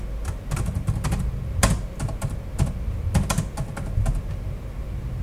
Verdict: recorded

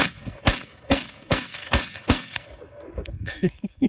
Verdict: remade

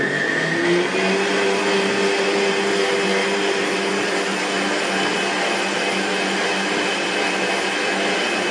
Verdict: recorded